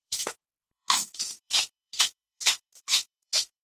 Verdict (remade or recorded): remade